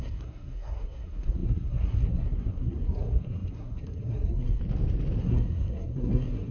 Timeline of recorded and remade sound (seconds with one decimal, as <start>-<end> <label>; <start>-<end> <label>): 0.0-4.6 remade; 4.6-5.2 recorded; 5.2-6.5 remade